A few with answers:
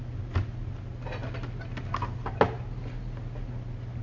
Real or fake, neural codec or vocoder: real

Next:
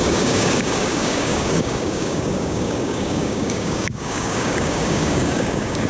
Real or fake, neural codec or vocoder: fake, codec, DAC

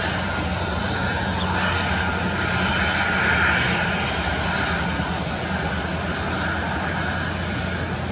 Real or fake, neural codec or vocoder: real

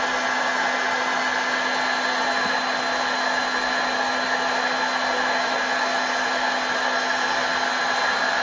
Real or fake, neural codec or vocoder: real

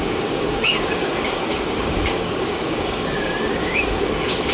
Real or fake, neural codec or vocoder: fake, codec, DAC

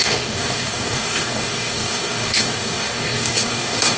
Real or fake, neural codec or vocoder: fake, codec, DAC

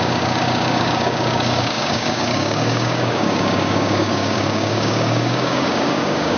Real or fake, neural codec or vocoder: fake, codec, DAC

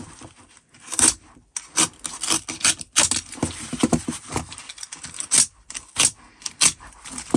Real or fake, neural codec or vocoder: real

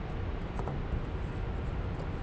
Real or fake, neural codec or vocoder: real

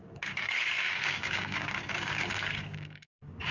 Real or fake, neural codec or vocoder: fake, codec, DAC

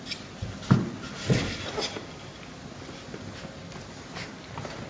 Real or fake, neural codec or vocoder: real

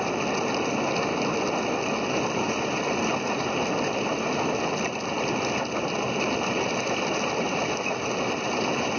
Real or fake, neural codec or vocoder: real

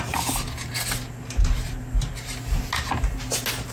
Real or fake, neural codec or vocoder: real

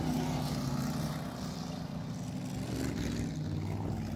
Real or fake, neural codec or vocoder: real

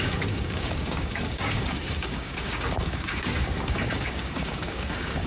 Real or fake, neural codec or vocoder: fake, codec, DAC